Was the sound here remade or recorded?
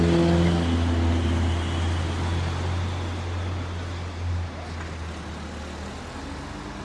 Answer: recorded